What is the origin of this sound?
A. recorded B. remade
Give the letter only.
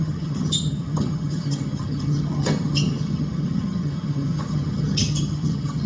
B